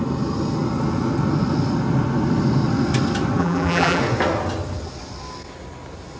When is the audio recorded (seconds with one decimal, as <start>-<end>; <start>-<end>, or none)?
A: 0.0-3.4; 4.0-6.2